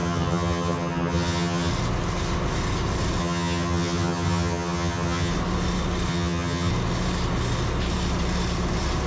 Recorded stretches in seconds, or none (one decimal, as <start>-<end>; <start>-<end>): 1.7-3.2; 5.3-6.1; 6.7-9.1